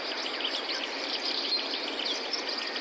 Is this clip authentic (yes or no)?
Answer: yes